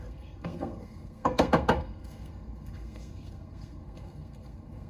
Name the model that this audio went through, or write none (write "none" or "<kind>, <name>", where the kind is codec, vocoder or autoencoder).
codec, SNAC